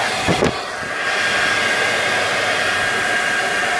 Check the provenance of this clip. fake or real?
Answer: real